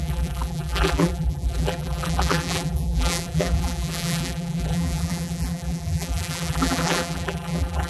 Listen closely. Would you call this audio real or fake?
fake